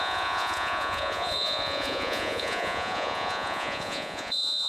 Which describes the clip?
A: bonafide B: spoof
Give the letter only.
B